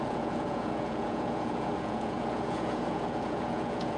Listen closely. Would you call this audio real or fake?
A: fake